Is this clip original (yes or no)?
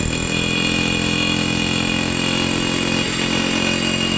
yes